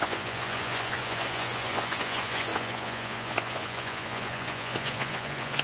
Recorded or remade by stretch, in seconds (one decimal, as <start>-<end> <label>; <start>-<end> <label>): 0.0-5.6 remade

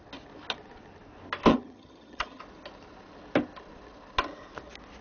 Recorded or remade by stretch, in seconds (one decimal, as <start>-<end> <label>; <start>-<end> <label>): 0.0-1.5 recorded; 1.5-2.4 remade; 2.4-5.0 recorded

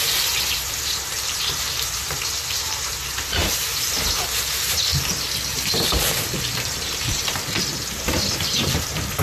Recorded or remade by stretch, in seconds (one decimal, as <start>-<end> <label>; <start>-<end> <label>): 0.0-4.9 remade; 4.9-5.5 recorded; 5.5-9.2 remade

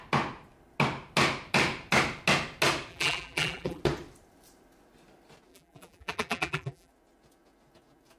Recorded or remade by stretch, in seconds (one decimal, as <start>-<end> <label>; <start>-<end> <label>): 0.0-2.9 recorded; 2.9-3.8 remade; 3.8-5.5 recorded; 5.5-6.9 remade; 6.9-8.2 recorded